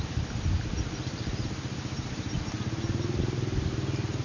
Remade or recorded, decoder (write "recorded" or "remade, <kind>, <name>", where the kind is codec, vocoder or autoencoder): recorded